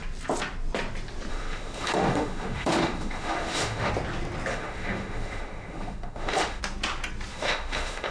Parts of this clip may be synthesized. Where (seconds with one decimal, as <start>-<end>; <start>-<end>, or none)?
1.3-3.9; 4.5-6.6; 7.3-8.1